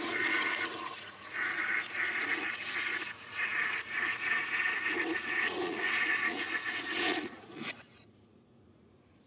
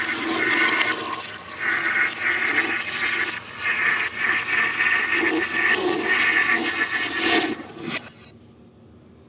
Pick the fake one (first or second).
first